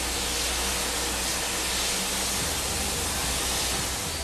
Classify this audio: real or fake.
real